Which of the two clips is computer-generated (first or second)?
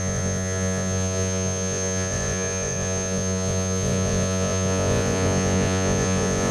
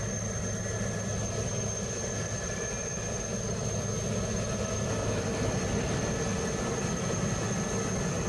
first